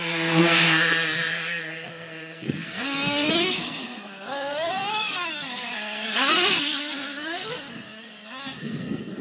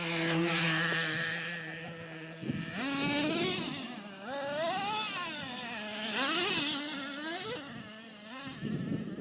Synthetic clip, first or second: first